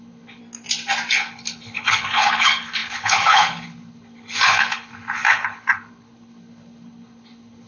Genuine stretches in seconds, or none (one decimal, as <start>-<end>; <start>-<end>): 0.4-1.1